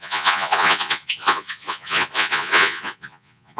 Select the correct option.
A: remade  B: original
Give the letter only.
A